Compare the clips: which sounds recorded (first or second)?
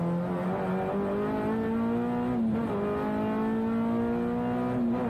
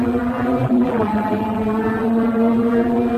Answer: first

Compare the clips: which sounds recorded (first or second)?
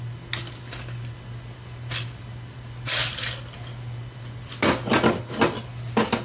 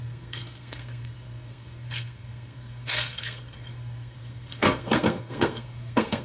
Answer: first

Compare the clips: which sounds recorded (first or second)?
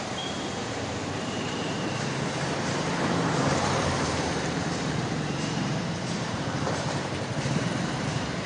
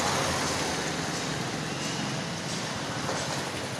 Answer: second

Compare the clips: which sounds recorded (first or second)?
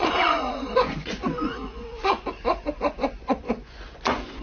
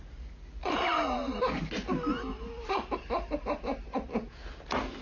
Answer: second